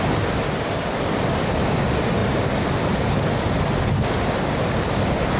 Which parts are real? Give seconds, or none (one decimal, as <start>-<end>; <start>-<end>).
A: 0.0-5.4